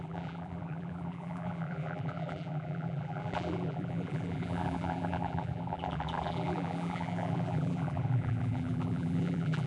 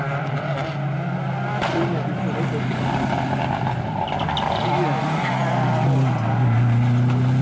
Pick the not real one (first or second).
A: first